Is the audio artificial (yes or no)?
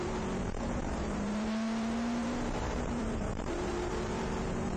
yes